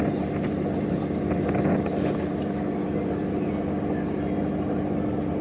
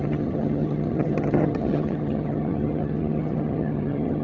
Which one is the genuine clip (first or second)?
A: first